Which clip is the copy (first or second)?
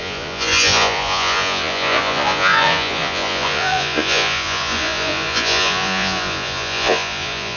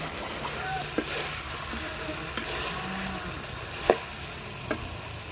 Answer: first